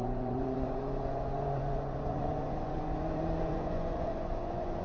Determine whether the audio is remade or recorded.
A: remade